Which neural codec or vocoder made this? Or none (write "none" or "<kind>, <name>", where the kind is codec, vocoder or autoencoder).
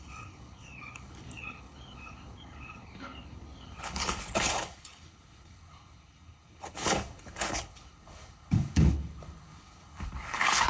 codec, HILCodec